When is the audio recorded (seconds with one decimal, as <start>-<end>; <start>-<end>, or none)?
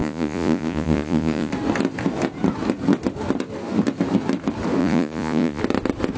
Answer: 1.5-4.8; 5.6-6.2